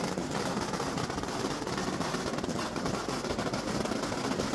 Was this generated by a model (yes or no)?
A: no